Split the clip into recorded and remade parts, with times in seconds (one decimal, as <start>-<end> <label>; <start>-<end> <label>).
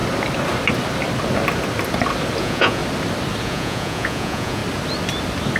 0.0-2.4 recorded; 2.4-2.8 remade; 2.8-3.4 recorded; 3.4-4.6 remade; 4.6-5.6 recorded